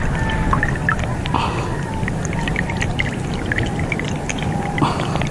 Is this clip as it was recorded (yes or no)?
no